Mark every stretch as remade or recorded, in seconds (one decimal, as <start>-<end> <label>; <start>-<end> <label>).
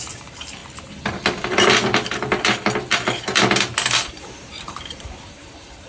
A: 0.0-0.6 remade; 0.6-4.1 recorded; 4.1-5.9 remade